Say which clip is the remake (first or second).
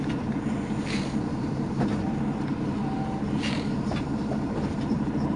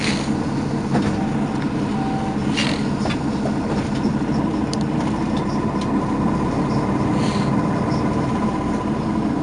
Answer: first